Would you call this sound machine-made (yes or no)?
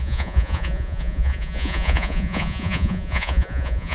yes